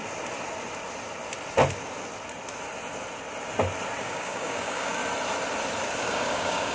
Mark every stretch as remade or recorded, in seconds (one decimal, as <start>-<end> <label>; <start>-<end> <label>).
0.0-4.0 recorded; 4.0-5.0 remade; 5.0-6.0 recorded; 6.0-6.7 remade